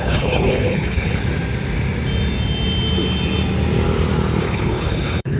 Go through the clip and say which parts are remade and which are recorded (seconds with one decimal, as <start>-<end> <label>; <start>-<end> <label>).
0.0-1.2 remade; 1.2-4.4 recorded; 4.4-5.4 remade